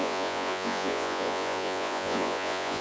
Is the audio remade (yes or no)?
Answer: yes